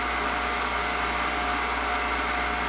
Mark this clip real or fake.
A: real